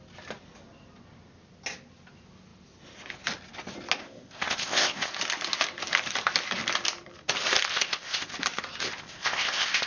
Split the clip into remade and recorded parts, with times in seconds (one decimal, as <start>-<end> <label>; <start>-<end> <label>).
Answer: 0.0-4.0 recorded; 4.0-5.1 remade; 5.1-7.7 recorded; 7.7-8.3 remade; 8.3-8.8 recorded; 8.8-9.9 remade